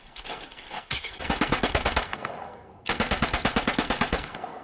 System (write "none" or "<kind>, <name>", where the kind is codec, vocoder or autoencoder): codec, SNAC